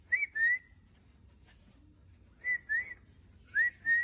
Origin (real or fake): real